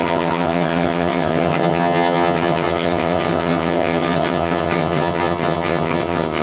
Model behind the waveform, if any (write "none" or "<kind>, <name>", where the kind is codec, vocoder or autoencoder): vocoder, HiFi-GAN